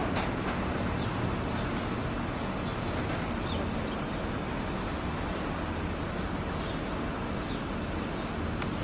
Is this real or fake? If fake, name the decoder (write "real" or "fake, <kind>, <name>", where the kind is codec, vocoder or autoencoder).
real